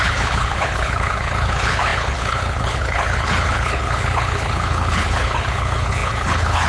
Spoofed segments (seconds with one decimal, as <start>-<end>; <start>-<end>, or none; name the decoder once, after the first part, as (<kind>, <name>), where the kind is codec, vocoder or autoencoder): 0.0-6.7 (codec, HILCodec)